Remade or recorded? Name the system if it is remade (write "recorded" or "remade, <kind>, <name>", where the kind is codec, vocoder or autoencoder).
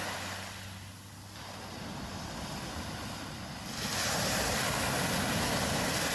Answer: recorded